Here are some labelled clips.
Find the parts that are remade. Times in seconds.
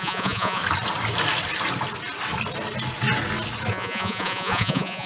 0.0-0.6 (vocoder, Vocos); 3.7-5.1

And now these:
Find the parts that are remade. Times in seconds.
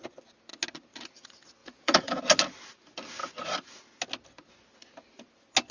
1.6-2.2 (vocoder, Vocos)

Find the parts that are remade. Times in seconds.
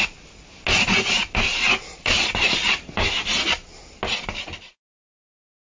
none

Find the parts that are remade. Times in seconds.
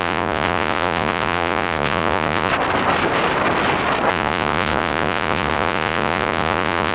0.0-2.5 (vocoder, Vocos); 4.1-6.9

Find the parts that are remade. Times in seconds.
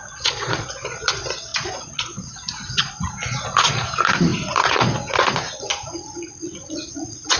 0.0-7.4 (vocoder, Vocos)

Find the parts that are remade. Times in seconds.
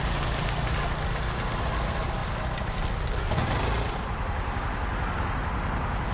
none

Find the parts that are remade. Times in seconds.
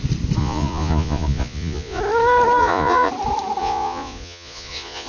0.4-2.0 (vocoder, Vocos); 2.6-3.1; 3.6-5.1